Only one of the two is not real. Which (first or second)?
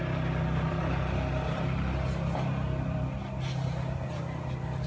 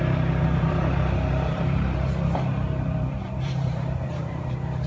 second